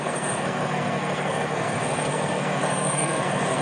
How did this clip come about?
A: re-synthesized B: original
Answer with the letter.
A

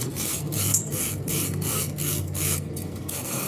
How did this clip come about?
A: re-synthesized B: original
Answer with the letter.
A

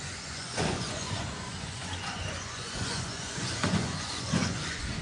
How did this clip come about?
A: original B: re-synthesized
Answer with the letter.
B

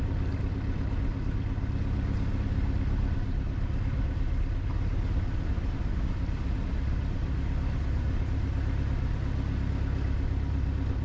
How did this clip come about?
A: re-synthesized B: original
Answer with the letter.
B